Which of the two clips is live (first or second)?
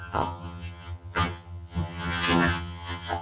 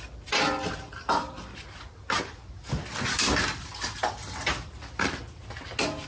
second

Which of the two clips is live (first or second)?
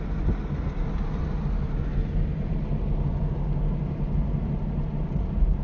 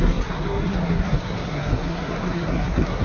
first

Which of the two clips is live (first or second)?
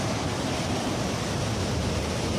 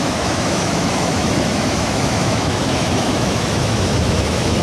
first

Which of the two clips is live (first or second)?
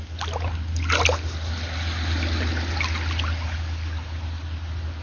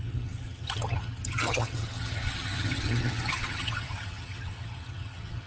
first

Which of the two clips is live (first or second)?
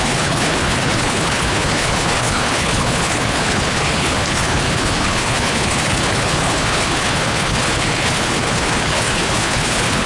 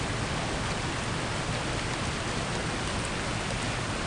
second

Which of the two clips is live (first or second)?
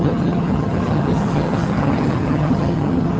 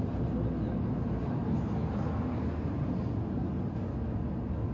second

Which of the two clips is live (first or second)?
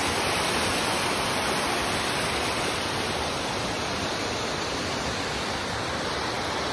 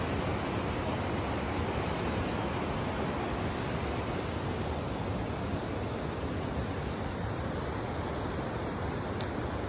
second